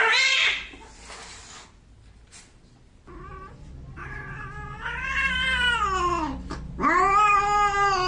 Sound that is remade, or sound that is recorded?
recorded